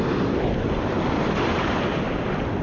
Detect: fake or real real